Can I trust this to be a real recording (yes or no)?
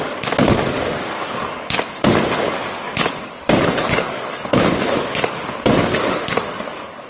no